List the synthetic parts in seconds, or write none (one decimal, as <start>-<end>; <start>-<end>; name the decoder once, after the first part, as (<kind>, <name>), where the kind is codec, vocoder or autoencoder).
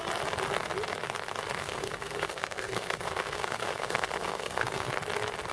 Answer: 1.6-4.9 (codec, SNAC)